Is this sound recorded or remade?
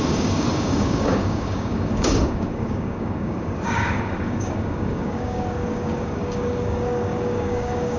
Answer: remade